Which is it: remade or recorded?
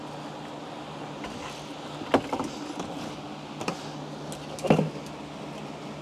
recorded